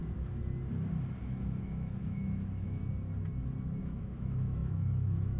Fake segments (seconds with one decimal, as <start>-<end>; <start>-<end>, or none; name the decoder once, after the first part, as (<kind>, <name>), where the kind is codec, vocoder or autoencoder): 1.2-2.8 (autoencoder, DAC-VAE); 3.8-5.4